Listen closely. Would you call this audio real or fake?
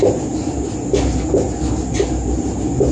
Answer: real